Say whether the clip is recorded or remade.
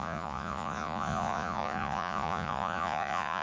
remade